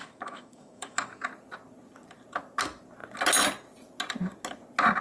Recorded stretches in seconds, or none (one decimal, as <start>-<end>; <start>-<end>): 1.3-5.0